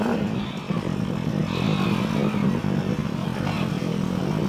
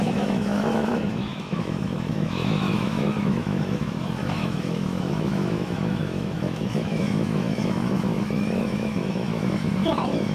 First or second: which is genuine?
first